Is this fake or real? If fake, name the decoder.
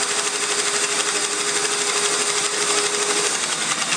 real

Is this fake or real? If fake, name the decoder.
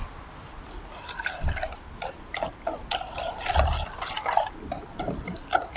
real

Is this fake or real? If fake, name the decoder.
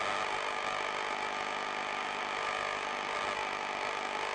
real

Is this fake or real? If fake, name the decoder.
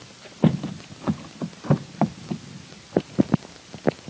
real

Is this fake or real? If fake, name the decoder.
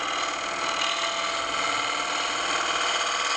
real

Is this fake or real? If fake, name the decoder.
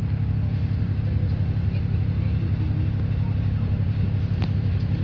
real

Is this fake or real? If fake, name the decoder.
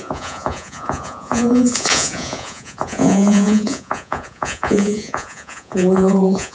fake, vocoder, Vocos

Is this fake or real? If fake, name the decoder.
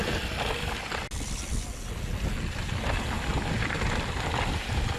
real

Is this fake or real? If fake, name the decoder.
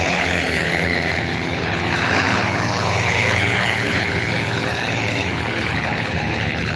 fake, codec, HILCodec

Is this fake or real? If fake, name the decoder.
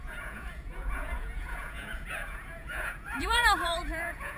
fake, vocoder, Vocos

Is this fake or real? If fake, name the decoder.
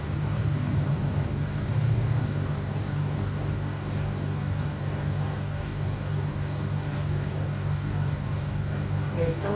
fake, codec, DAC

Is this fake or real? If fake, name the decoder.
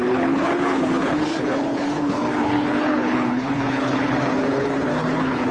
fake, codec, HILCodec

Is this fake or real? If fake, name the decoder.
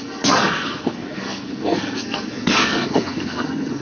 fake, codec, SNAC